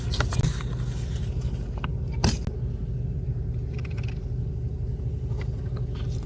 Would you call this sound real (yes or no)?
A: yes